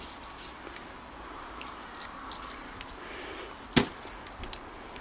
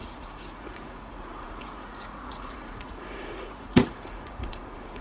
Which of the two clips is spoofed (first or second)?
second